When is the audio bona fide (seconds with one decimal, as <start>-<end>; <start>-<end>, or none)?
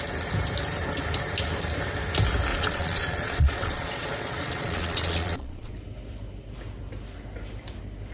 0.0-2.5; 5.7-8.1